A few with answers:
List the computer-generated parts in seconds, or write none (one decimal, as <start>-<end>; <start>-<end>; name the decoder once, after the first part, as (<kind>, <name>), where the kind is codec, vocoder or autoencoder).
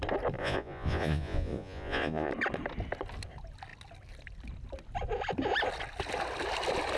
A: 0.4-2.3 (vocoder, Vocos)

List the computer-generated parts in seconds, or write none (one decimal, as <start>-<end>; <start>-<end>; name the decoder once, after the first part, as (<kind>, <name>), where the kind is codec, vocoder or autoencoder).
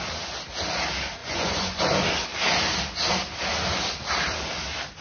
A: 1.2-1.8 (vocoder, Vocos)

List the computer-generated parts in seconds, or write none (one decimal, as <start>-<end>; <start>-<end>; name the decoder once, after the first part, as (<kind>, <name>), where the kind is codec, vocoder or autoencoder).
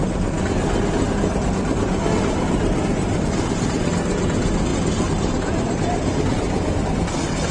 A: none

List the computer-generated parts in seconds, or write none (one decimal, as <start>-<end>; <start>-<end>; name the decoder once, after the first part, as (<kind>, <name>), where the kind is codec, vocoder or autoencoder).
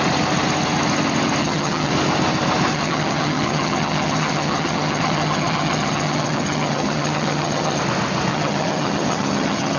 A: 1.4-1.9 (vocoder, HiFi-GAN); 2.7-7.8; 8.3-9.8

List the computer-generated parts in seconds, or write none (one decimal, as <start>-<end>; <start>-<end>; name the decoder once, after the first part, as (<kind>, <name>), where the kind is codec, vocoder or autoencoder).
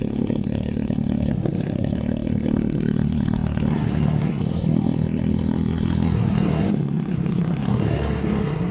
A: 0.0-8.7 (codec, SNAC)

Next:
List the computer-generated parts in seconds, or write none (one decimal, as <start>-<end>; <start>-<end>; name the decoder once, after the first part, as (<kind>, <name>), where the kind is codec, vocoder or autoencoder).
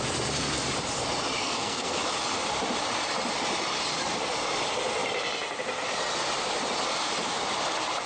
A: 1.4-2.0 (codec, SNAC)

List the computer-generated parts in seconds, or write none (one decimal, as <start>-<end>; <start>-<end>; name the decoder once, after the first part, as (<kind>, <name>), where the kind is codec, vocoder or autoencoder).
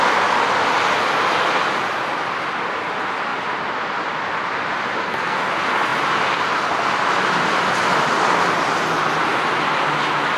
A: 5.0-5.5 (codec, SNAC)